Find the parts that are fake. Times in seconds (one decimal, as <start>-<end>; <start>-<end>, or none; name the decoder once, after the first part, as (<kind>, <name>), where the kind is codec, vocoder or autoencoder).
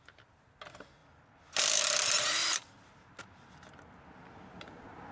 2.4-3.2 (vocoder, BigVGAN v2)